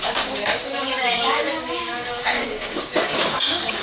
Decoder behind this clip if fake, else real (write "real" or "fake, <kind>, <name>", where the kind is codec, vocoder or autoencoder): fake, codec, DAC